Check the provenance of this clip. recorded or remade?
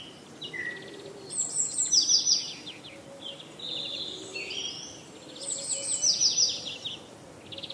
recorded